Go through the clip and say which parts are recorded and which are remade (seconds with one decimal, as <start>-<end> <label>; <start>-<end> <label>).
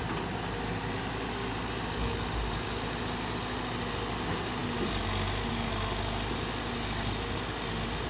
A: 0.0-8.1 recorded